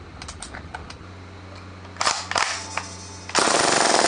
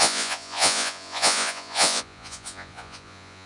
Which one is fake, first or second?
second